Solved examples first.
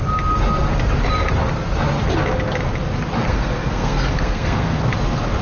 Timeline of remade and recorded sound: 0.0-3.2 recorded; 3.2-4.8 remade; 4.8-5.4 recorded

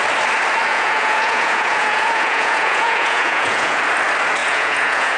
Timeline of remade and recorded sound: 0.0-0.7 recorded; 0.7-3.8 remade; 3.8-4.4 recorded; 4.4-5.2 remade